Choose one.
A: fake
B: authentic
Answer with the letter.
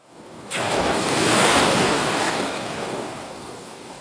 A